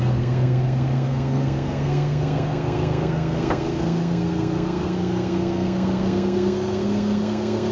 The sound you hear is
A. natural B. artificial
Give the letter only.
B